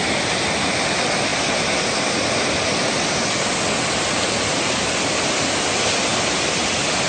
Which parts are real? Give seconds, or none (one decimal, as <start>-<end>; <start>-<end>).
0.0-7.1

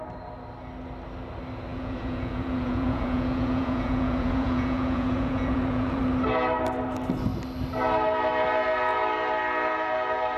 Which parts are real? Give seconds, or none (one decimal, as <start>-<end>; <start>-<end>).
0.0-1.7; 6.0-10.4

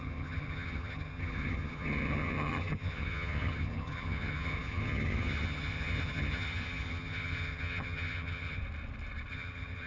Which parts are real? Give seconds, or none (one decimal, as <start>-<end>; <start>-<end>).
8.6-9.3

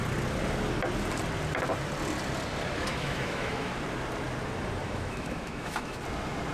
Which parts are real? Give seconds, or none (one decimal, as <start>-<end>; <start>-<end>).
0.0-2.9; 3.7-4.8; 6.0-6.5